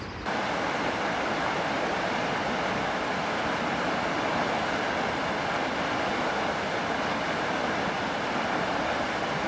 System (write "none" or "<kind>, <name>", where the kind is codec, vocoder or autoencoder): none